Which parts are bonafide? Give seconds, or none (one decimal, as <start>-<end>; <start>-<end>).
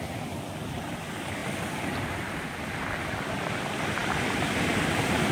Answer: 0.0-5.3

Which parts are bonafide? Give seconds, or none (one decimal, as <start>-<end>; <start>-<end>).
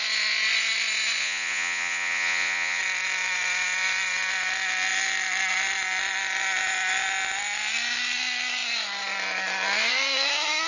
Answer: 0.0-1.2; 2.8-10.7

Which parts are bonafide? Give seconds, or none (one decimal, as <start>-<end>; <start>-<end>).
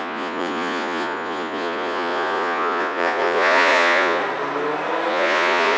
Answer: 4.2-5.1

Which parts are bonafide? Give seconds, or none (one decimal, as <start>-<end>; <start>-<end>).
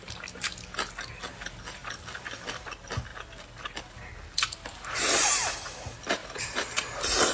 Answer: 0.0-6.2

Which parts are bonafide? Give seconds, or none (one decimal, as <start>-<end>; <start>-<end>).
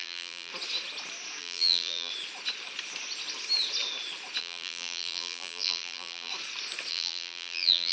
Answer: 0.5-1.4; 2.1-4.4; 6.3-6.9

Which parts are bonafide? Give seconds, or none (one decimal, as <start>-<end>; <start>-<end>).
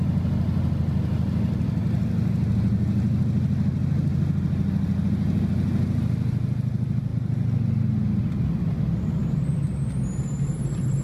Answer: 0.0-11.0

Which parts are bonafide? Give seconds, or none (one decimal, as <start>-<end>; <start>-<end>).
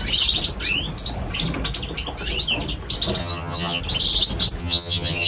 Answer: 0.0-3.2; 3.8-4.6